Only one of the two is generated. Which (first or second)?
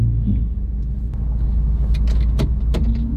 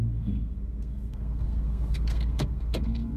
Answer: second